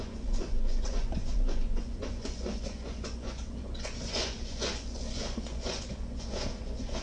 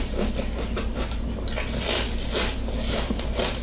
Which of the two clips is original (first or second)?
second